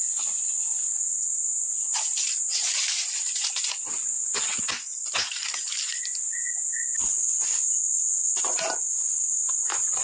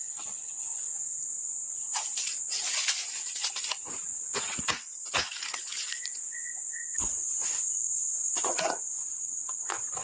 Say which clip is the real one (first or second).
first